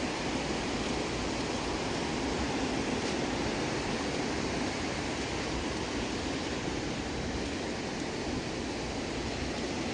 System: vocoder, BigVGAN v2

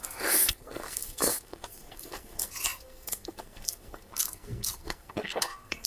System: codec, SNAC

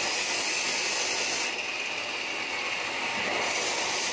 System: none